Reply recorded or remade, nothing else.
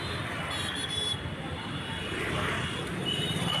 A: recorded